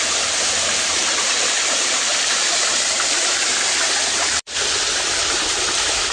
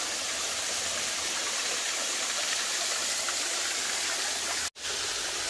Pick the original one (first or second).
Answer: second